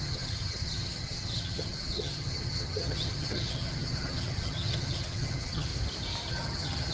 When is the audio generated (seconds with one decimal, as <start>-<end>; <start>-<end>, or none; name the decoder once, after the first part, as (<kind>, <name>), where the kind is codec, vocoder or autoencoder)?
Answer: 0.0-5.7 (vocoder, HiFi-GAN); 6.3-6.9